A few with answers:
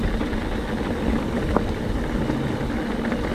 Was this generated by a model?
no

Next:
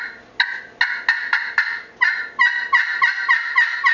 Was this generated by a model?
no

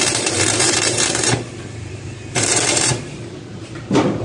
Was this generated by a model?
yes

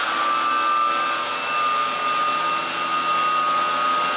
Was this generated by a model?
no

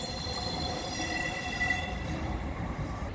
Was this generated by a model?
yes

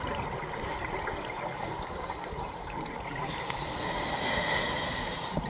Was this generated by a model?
no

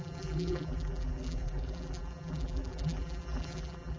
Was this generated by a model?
yes